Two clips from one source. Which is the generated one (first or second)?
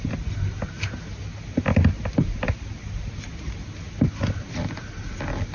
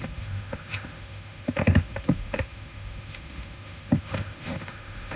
second